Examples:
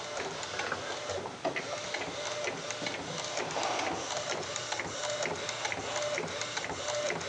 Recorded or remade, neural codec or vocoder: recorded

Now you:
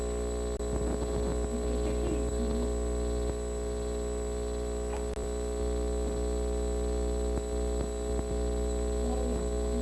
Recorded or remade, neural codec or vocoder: recorded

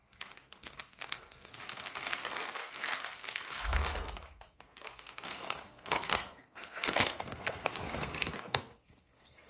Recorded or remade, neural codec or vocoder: remade, codec, SNAC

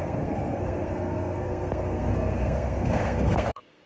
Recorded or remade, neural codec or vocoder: remade, codec, SNAC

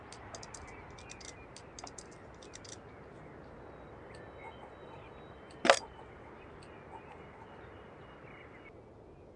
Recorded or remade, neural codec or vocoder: recorded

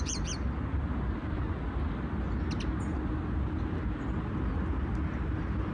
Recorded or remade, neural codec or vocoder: recorded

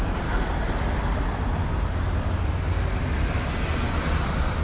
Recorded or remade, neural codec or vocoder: recorded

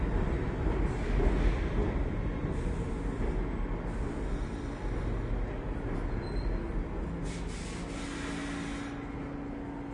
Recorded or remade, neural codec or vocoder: recorded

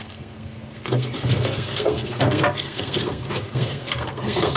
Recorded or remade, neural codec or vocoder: remade, codec, SNAC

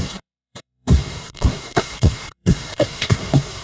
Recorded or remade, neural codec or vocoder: remade, codec, SNAC